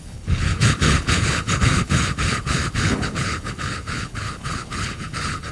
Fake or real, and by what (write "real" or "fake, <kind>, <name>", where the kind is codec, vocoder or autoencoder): fake, codec, HILCodec